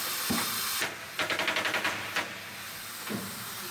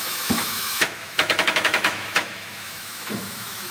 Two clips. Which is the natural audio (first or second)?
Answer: first